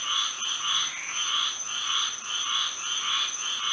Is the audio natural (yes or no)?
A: yes